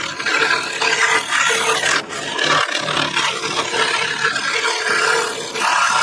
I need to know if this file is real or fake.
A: real